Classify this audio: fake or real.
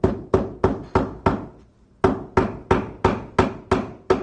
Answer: real